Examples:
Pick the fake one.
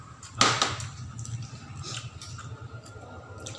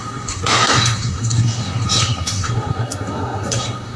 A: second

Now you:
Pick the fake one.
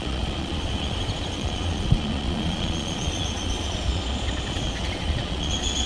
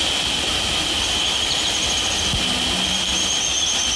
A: first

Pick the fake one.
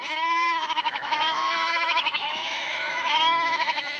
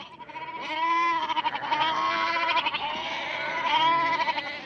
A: first